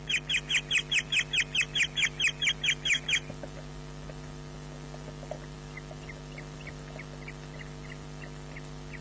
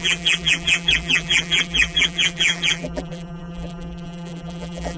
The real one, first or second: first